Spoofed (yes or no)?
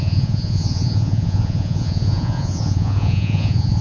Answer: yes